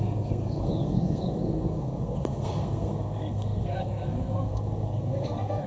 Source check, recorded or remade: remade